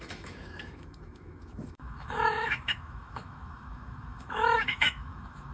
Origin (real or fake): fake